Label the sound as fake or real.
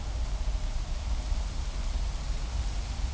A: real